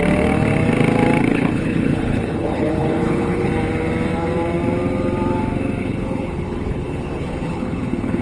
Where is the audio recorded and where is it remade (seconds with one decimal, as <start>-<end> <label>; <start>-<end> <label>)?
0.0-1.3 recorded; 1.3-3.5 remade; 3.5-5.8 recorded; 5.8-8.2 remade